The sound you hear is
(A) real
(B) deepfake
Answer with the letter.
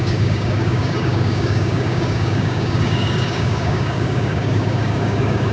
B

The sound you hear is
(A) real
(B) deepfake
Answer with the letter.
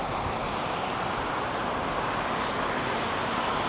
A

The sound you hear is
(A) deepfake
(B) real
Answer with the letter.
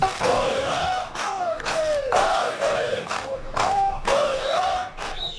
A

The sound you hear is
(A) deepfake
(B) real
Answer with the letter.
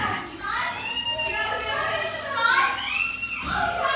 B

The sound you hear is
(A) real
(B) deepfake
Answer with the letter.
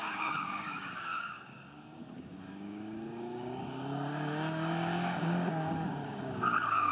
B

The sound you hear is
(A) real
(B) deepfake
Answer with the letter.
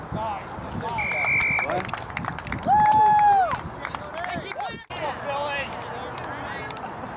A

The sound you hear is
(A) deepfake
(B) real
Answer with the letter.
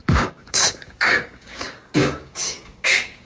A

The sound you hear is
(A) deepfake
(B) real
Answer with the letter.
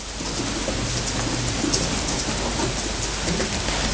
B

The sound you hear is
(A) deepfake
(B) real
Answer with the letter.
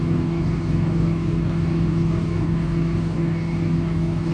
A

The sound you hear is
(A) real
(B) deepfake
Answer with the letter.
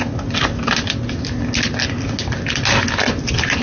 A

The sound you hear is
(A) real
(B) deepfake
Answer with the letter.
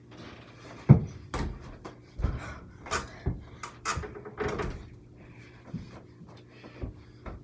A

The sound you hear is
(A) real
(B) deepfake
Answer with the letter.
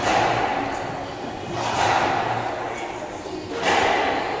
A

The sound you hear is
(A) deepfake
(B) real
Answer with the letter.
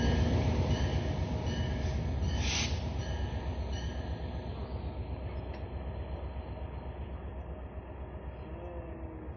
B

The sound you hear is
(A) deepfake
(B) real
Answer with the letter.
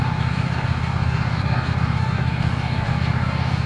A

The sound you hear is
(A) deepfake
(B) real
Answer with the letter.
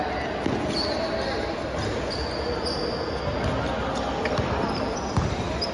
B